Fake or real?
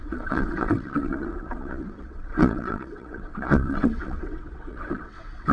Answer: fake